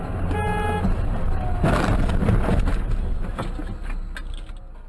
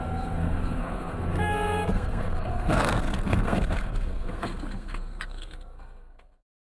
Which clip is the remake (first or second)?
second